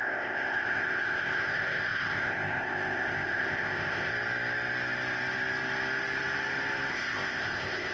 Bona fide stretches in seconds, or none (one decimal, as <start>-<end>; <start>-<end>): 4.1-6.9